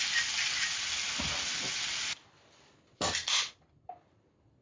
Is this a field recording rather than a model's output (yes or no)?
yes